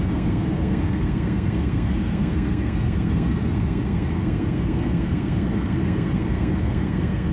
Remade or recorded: remade